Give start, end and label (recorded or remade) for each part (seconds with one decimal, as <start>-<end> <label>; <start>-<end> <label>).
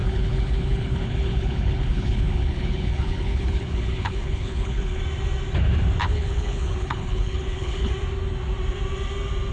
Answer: 0.0-5.0 remade; 5.0-6.0 recorded; 6.0-7.9 remade; 7.9-9.5 recorded